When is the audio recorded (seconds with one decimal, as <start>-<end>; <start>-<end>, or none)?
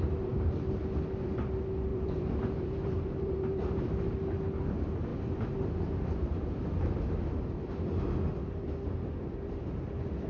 0.0-1.9; 4.1-10.3